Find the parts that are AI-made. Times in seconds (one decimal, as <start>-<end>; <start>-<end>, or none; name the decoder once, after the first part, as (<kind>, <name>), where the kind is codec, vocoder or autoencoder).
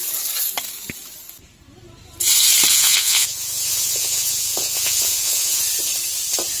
2.7-5.6 (vocoder, Vocos)